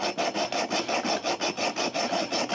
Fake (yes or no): no